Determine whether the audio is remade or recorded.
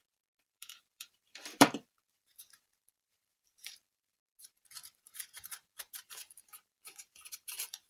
remade